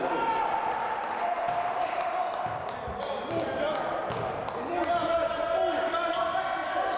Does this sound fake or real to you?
real